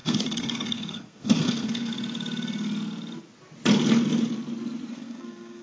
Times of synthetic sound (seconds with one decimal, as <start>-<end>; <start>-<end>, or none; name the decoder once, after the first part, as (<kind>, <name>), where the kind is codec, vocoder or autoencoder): 0.0-1.9 (codec, SNAC); 4.9-5.6